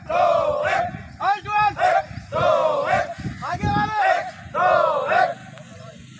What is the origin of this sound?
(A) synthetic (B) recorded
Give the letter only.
B